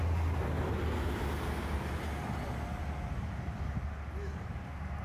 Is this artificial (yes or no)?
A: no